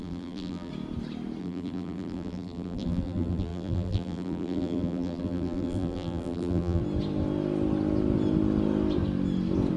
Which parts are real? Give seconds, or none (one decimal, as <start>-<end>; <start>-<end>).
0.7-1.4; 6.8-9.8